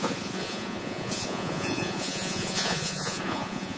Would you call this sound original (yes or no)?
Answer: no